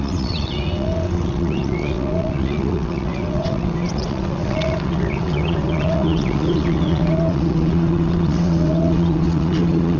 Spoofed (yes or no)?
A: yes